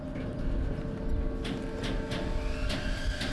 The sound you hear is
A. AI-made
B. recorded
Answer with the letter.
B